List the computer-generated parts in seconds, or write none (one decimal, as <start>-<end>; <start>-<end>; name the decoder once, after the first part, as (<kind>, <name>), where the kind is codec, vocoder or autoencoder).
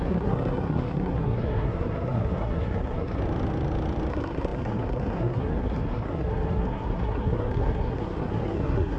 0.0-3.2 (codec, SNAC); 4.1-9.0